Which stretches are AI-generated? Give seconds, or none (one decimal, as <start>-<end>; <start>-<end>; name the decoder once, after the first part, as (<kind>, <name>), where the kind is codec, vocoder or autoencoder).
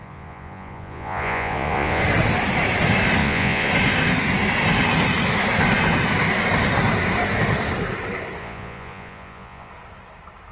0.0-2.0 (vocoder, Vocos); 3.2-3.7; 8.4-9.7